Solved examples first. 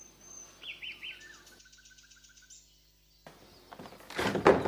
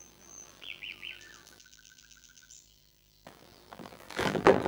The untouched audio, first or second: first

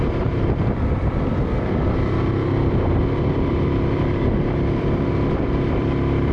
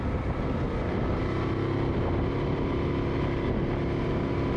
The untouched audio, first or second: second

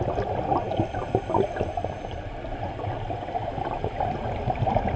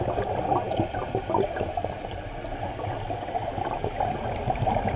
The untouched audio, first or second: second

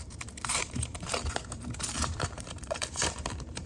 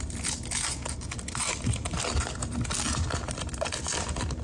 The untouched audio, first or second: second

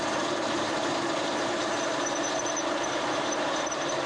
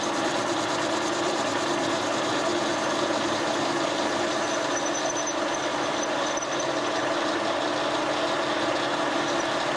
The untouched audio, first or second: second